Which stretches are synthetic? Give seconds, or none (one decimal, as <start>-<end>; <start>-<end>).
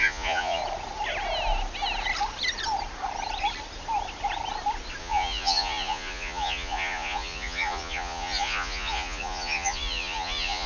0.0-0.6; 5.0-10.7